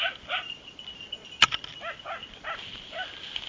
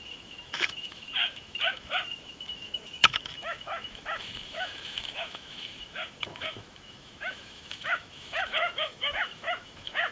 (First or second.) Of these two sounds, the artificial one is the second